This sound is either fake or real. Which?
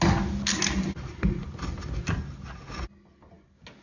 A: real